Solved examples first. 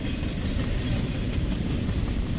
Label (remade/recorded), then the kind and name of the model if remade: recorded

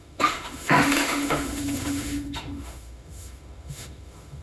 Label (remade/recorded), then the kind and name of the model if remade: remade, autoencoder, DAC-VAE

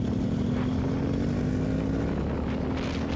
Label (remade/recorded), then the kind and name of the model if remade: recorded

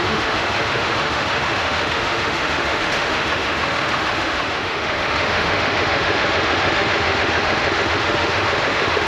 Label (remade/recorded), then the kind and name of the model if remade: remade, autoencoder, DAC-VAE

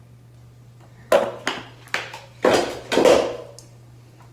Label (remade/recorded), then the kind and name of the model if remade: recorded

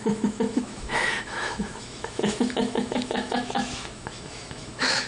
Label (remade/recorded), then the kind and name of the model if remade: remade, autoencoder, DAC-VAE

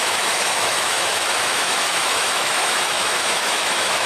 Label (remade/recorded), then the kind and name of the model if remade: remade, autoencoder, DAC-VAE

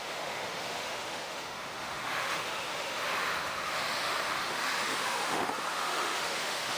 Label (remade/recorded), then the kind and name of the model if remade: remade, autoencoder, DAC-VAE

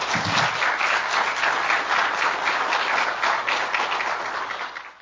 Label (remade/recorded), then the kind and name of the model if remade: recorded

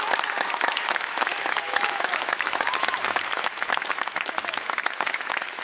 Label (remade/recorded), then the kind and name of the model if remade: remade, autoencoder, DAC-VAE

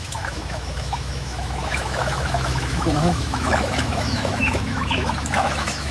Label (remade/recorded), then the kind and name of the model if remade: remade, autoencoder, DAC-VAE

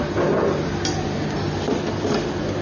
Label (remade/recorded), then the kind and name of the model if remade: recorded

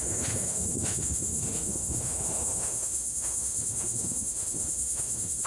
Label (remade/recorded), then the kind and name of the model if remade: remade, autoencoder, DAC-VAE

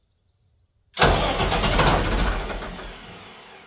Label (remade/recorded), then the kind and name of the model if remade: recorded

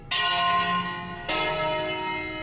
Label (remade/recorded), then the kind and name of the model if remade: recorded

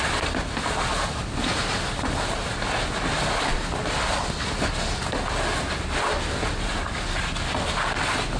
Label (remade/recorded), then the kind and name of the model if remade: recorded